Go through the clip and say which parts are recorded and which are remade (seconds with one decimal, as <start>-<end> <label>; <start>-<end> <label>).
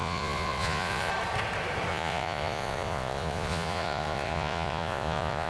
0.0-1.1 remade; 1.1-1.9 recorded; 1.9-5.5 remade